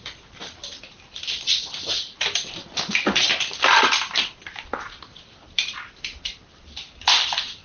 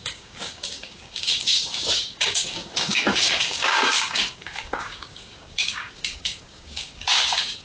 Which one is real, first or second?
first